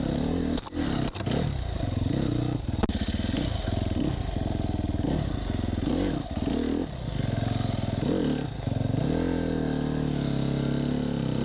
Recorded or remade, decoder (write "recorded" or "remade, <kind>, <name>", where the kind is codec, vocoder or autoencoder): recorded